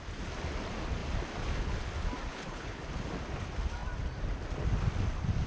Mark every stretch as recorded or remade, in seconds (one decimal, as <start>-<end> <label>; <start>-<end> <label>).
0.0-2.3 recorded; 2.3-2.8 remade; 2.8-5.5 recorded